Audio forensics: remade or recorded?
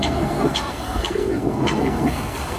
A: remade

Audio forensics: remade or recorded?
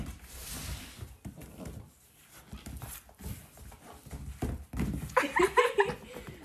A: recorded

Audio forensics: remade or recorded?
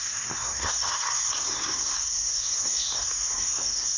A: remade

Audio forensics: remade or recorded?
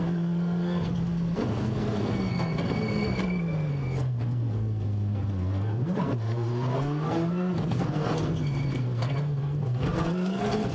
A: remade